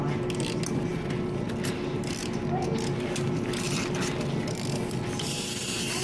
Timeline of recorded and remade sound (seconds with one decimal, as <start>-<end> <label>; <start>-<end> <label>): 0.0-6.0 recorded